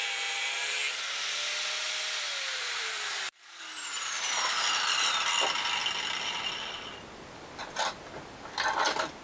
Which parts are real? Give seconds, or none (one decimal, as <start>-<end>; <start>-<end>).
0.8-2.3; 3.6-9.2